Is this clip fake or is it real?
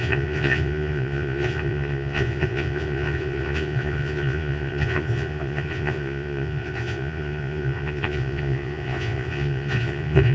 fake